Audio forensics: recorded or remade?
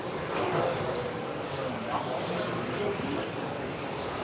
remade